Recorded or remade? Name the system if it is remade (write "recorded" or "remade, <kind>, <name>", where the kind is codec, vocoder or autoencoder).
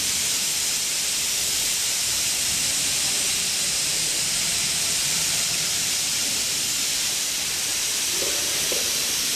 remade, vocoder, BigVGAN v2